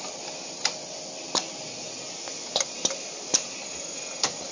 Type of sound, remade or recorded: recorded